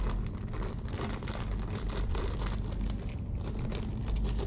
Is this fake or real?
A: real